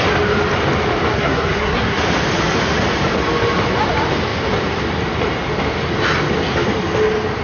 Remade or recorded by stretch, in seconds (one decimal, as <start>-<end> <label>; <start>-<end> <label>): 0.0-1.1 recorded; 1.1-2.0 remade; 2.0-7.4 recorded